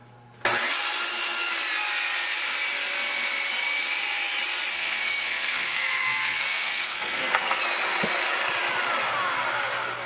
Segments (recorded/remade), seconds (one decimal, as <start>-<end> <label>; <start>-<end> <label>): 0.0-4.7 recorded; 4.7-7.6 remade; 7.6-10.1 recorded

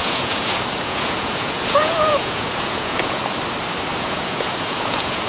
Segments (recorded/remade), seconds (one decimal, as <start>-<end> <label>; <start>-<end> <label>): 0.0-3.2 remade; 3.2-3.9 recorded; 3.9-5.3 remade

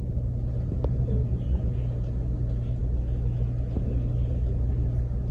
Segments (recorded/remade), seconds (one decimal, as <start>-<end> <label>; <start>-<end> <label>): 0.0-1.2 recorded; 1.2-1.7 remade; 1.7-5.3 recorded

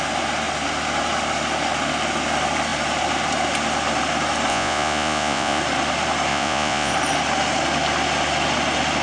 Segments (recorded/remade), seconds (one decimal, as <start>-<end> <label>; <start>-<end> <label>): 0.0-4.5 recorded; 4.5-5.6 remade; 5.6-6.3 recorded; 6.3-6.9 remade; 6.9-9.0 recorded

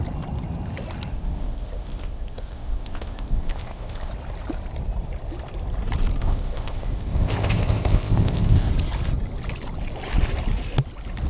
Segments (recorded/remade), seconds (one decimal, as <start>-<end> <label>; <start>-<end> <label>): 0.0-1.1 recorded; 1.1-4.1 remade; 4.1-6.2 recorded; 6.2-8.7 remade; 8.7-11.3 recorded